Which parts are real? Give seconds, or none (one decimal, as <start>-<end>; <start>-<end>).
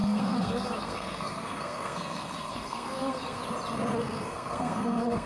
3.4-4.0